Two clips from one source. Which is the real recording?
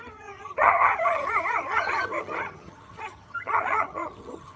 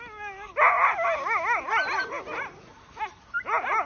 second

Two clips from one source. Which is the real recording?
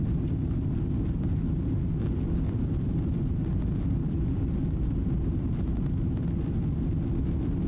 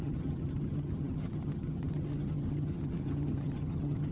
first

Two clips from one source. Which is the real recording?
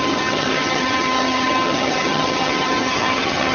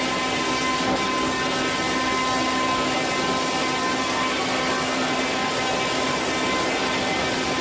second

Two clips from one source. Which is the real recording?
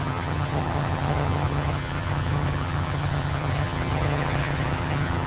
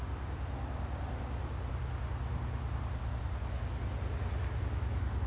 second